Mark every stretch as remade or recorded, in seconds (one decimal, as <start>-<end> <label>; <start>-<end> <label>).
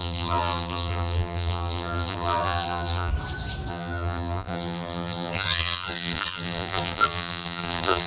0.0-3.1 remade; 3.1-3.7 recorded; 3.7-8.1 remade